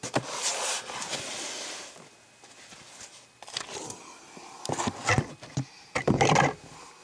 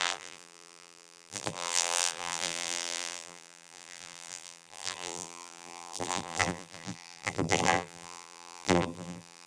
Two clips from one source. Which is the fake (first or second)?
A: second